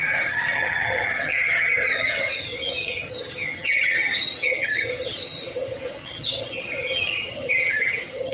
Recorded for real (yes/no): no